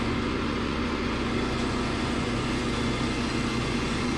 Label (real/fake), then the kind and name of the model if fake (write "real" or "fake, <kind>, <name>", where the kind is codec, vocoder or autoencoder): fake, vocoder, Vocos